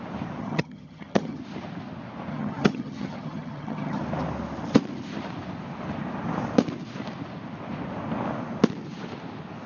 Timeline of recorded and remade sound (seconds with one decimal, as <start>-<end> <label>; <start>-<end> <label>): 0.0-0.4 recorded; 0.4-1.4 remade; 1.4-2.3 recorded; 2.3-4.0 remade; 4.0-9.7 recorded